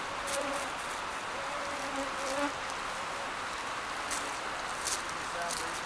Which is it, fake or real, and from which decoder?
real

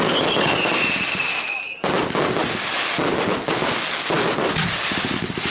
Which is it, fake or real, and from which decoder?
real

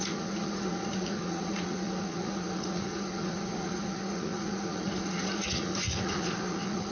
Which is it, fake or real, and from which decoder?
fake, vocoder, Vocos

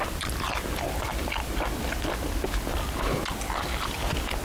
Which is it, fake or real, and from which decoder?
real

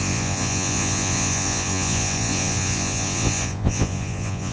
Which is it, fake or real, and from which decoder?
fake, vocoder, Vocos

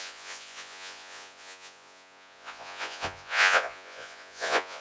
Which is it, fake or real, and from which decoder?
fake, vocoder, Vocos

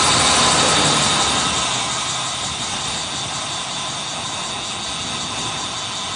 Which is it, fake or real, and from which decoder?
real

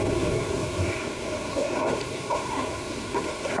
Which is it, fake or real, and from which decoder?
fake, codec, SNAC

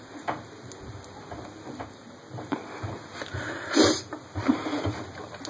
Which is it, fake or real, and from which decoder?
real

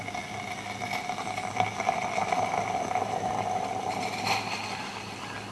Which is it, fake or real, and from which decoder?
real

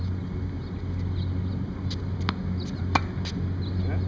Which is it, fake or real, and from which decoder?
real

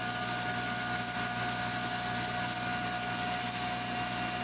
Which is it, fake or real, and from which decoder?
real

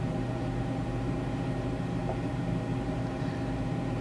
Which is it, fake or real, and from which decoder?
fake, vocoder, BigVGAN v2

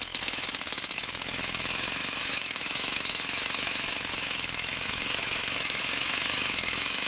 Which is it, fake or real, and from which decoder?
fake, autoencoder, DAC-VAE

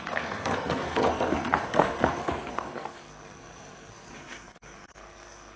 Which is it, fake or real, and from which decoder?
fake, codec, SNAC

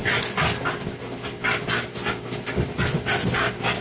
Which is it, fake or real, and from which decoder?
real